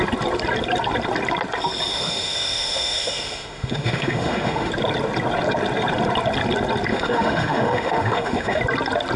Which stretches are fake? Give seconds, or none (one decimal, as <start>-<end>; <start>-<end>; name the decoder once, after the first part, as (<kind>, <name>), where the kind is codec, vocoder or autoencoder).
1.9-4.7 (autoencoder, DAC-VAE); 6.9-8.6